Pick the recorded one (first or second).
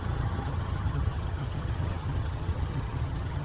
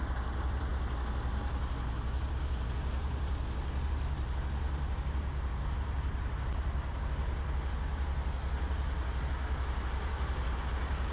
second